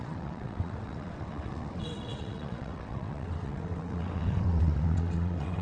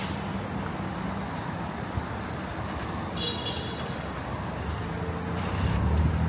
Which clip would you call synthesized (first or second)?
first